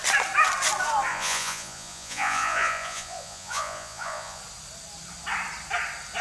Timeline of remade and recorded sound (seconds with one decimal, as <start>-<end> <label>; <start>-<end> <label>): 0.0-1.1 recorded; 1.1-4.4 remade; 4.4-6.2 recorded